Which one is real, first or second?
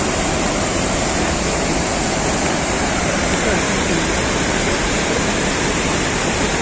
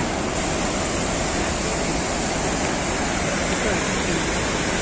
second